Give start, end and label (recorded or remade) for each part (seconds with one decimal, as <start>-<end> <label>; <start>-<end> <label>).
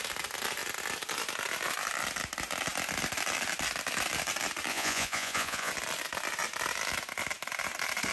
0.0-4.7 recorded; 4.7-5.7 remade; 5.7-8.1 recorded